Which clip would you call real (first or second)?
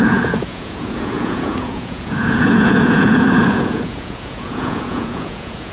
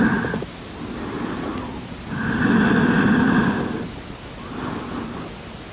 second